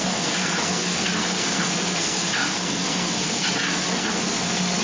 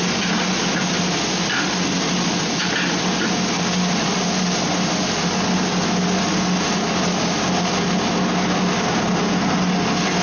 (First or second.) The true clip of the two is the second